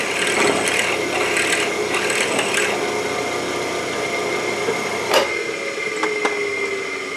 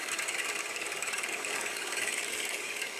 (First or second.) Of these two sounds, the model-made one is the second